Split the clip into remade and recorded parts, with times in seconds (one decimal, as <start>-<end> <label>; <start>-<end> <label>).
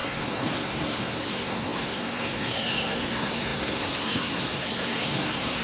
0.0-5.6 remade